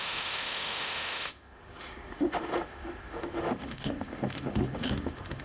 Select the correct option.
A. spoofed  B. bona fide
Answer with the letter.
A